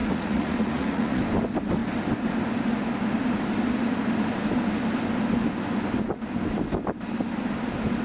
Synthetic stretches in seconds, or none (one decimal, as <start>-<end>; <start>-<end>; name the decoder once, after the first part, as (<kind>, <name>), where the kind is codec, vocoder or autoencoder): 0.0-1.2 (vocoder, Vocos)